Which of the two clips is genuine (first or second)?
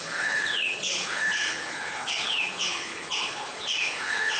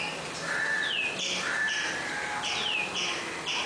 second